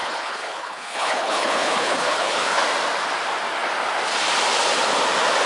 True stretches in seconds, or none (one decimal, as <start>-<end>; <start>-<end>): 2.6-5.5